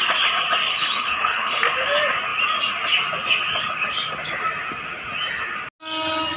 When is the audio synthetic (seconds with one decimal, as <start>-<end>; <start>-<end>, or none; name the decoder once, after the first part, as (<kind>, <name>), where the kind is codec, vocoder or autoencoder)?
0.7-1.6 (codec, HILCodec)